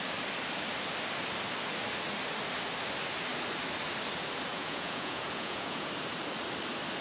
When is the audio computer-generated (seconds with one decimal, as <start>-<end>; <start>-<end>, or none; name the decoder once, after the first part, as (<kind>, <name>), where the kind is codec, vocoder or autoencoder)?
4.5-5.9 (vocoder, Vocos)